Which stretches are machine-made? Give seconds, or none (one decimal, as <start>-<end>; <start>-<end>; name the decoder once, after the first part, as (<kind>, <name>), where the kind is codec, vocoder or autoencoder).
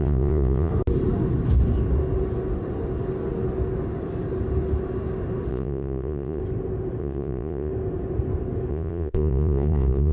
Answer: 0.0-0.7 (vocoder, Vocos); 5.5-6.4; 7.0-7.7; 8.7-10.1